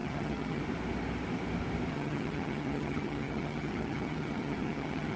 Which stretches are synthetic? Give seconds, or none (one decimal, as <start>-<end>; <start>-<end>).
0.0-0.6; 1.9-5.2